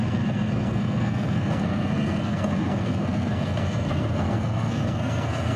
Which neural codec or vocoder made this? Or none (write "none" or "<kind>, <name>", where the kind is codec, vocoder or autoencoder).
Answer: codec, SNAC